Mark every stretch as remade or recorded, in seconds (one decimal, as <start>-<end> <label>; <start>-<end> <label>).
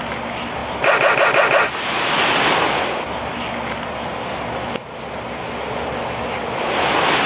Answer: 0.0-7.3 recorded